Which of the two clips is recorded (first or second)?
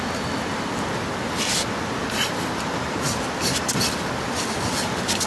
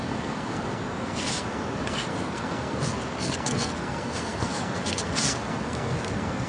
first